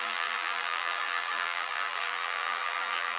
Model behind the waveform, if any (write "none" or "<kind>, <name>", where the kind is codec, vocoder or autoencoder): vocoder, BigVGAN v2